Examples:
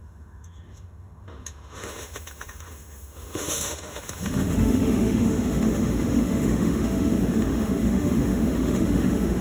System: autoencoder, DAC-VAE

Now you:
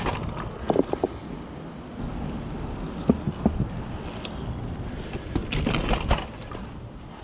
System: none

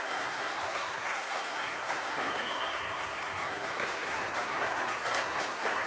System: codec, SNAC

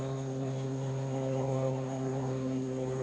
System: codec, SNAC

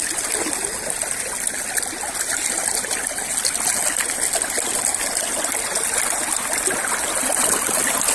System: none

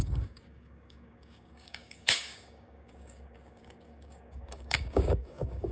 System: codec, DAC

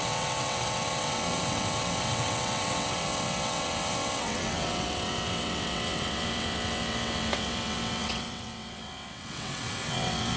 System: vocoder, WaveNeXt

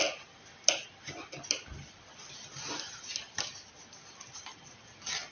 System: none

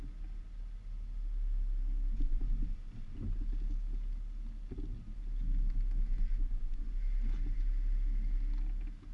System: none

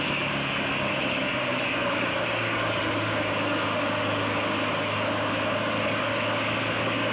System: codec, DAC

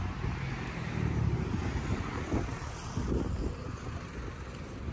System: none